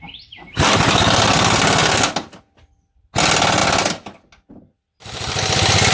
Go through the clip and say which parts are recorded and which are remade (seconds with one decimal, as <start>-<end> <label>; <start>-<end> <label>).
0.0-5.9 recorded